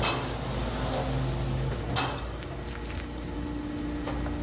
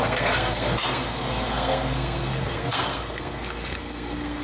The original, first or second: first